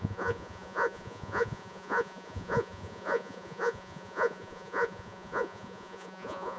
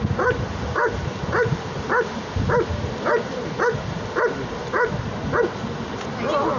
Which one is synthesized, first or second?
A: first